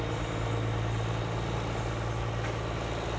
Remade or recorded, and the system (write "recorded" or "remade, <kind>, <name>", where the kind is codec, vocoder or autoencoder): recorded